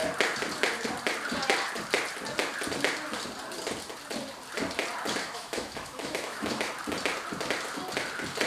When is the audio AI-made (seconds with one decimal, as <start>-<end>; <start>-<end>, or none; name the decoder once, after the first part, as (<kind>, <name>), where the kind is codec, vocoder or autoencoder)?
5.2-6.7 (autoencoder, DAC-VAE)